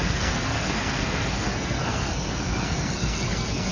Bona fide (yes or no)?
no